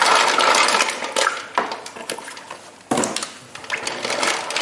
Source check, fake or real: real